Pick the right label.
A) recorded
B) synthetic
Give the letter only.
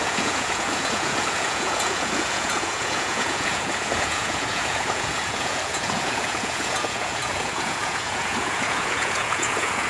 B